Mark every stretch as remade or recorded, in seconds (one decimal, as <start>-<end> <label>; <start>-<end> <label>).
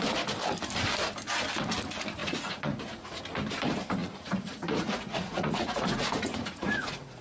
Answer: 0.0-2.2 recorded; 2.2-3.2 remade; 3.2-4.0 recorded; 4.0-7.2 remade